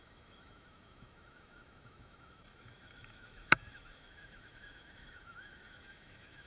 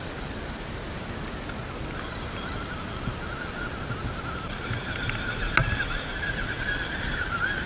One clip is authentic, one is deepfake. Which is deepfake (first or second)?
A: first